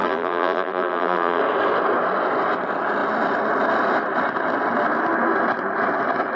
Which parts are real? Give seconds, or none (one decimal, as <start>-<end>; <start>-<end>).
1.4-6.4